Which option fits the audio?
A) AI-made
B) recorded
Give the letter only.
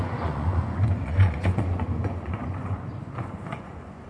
A